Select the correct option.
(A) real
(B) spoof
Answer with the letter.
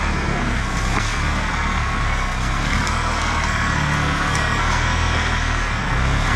B